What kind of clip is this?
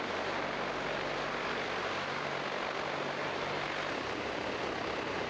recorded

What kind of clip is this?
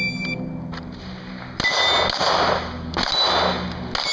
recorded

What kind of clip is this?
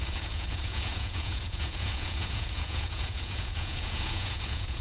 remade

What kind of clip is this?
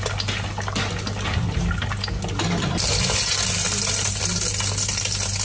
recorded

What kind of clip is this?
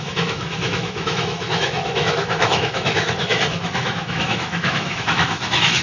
remade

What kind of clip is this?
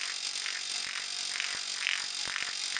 recorded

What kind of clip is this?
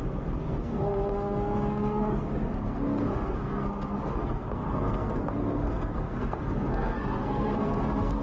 remade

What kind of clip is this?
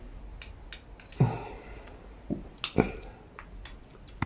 recorded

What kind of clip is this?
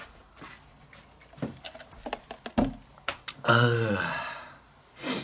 recorded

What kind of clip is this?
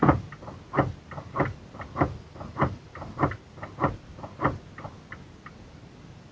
recorded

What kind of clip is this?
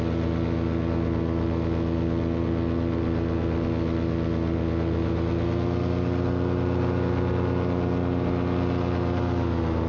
recorded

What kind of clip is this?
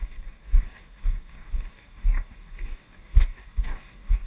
remade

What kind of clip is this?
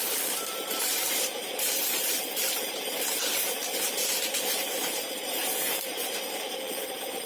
remade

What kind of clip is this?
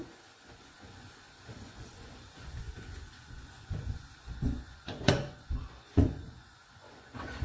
remade